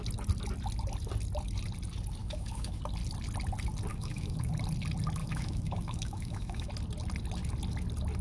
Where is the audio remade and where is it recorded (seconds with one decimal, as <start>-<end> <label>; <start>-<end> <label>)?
0.0-2.2 recorded; 2.2-2.8 remade; 2.8-3.9 recorded; 3.9-4.5 remade; 4.5-5.2 recorded; 5.2-6.7 remade; 6.7-8.2 recorded